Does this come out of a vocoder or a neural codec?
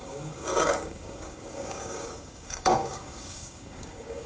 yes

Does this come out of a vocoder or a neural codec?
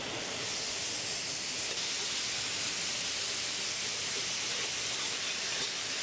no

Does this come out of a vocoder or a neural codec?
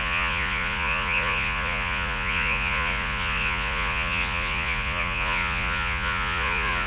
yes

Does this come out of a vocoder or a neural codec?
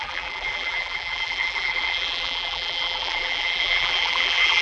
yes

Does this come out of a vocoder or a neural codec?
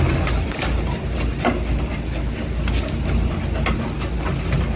no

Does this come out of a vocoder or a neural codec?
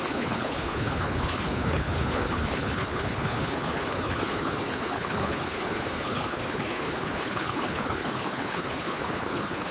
yes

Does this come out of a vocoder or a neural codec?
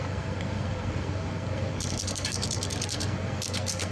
yes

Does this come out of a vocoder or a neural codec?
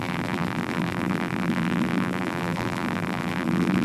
yes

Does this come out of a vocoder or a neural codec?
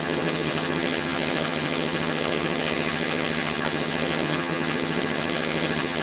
yes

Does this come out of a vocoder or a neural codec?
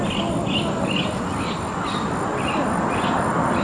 no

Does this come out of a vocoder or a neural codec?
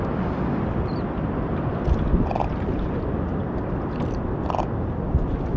no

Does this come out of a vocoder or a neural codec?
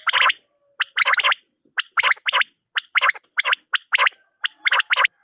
no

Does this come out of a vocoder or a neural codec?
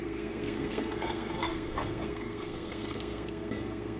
yes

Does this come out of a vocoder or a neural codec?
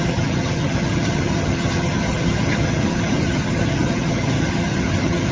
yes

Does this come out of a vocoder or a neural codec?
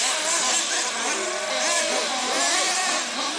no